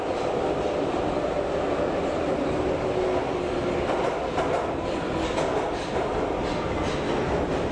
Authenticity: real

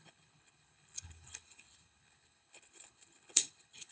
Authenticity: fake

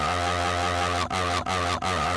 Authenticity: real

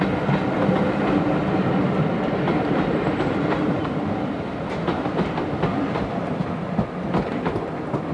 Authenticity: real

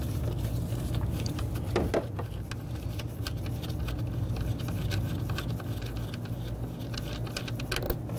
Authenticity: real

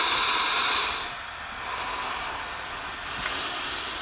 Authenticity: real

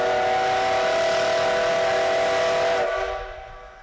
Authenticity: real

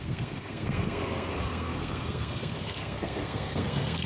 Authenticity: fake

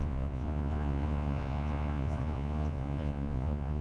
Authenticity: fake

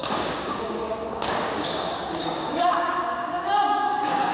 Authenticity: fake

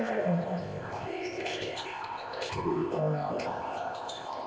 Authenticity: fake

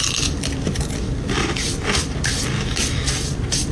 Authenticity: fake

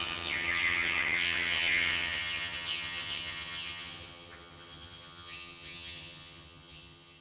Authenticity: fake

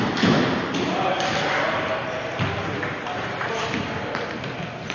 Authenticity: real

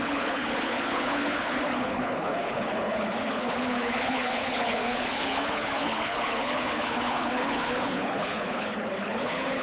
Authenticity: fake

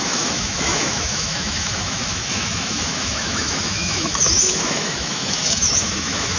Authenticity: fake